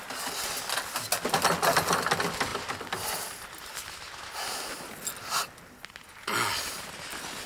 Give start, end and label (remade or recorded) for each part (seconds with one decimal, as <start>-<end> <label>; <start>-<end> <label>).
0.0-7.5 recorded